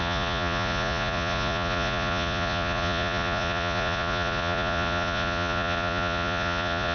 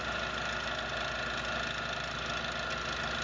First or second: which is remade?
first